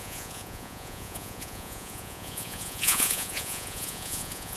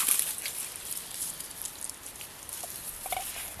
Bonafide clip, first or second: second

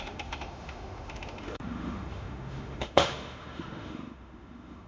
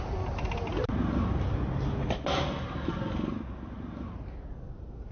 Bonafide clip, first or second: second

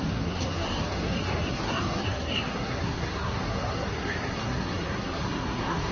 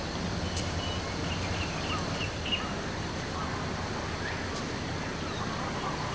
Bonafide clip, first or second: second